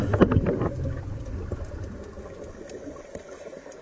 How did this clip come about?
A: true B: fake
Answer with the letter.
A